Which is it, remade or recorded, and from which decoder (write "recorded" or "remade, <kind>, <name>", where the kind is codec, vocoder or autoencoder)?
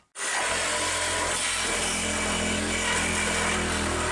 recorded